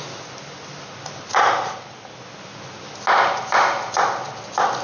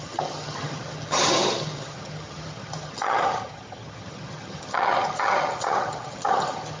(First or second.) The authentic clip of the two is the first